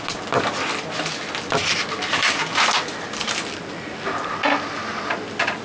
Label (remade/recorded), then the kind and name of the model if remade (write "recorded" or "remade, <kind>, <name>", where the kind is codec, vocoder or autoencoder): recorded